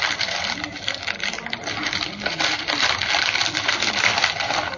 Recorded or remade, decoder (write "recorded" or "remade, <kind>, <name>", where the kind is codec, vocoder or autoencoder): remade, vocoder, BigVGAN v2